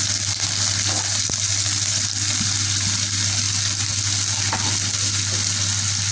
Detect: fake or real real